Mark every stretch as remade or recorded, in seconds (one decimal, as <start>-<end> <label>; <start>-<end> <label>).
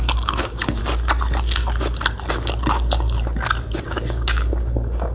0.0-0.8 remade; 0.8-3.9 recorded; 3.9-5.1 remade